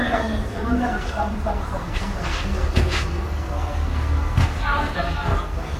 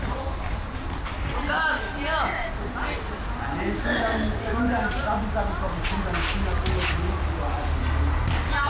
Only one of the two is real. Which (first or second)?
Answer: second